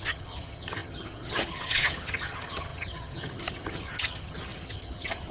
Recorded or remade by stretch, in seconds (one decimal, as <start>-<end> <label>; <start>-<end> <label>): 0.0-5.3 remade